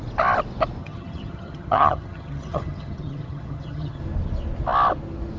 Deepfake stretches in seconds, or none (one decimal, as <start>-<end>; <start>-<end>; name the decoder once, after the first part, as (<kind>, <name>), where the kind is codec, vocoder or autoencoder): 0.8-4.0 (vocoder, HiFi-GAN)